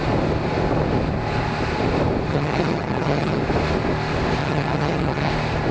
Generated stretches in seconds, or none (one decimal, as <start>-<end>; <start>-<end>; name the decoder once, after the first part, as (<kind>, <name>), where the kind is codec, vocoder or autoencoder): 2.3-3.4 (vocoder, HiFi-GAN); 4.4-5.3